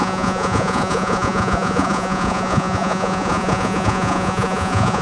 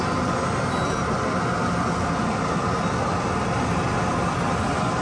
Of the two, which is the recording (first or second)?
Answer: second